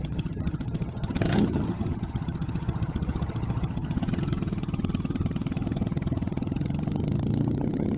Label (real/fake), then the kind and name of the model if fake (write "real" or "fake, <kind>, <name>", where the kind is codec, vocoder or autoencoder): fake, vocoder, HiFi-GAN